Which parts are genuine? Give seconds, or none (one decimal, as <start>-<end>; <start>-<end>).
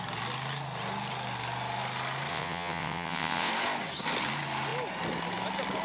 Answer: 0.0-2.3; 3.5-5.8